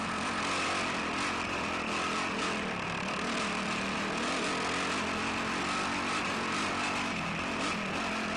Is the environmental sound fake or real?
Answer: real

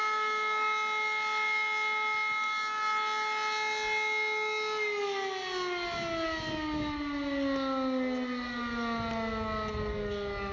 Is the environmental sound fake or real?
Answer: real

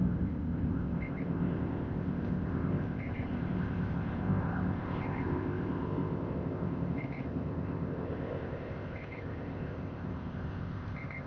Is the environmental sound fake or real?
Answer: fake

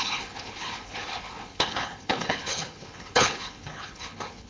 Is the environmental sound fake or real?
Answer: fake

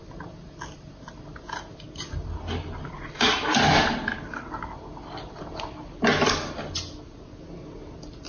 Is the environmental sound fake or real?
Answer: real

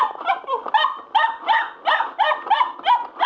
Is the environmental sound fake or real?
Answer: real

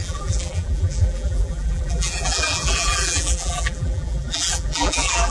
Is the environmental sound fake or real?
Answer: fake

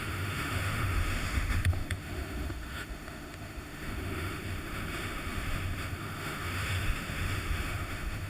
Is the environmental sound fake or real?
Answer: fake